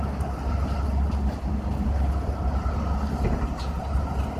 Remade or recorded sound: recorded